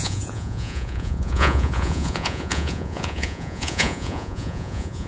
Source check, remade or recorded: remade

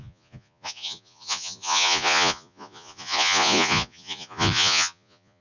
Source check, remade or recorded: remade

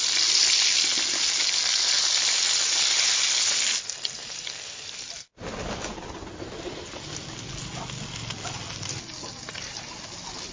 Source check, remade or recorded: recorded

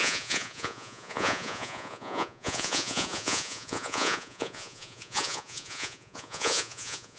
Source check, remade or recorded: remade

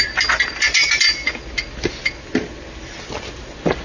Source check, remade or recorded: recorded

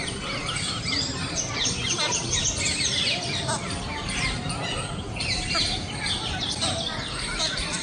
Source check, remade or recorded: recorded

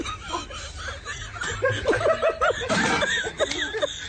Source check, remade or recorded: recorded